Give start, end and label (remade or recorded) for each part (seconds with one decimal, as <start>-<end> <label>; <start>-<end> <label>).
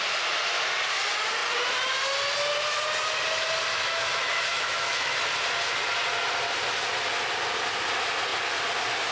0.0-3.7 recorded; 3.7-5.2 remade; 5.2-9.1 recorded